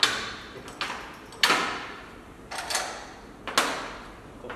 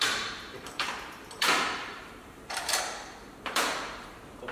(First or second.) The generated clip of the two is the second